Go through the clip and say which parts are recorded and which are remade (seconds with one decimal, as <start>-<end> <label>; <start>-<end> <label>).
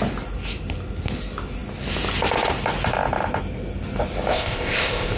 0.0-4.3 recorded; 4.3-5.2 remade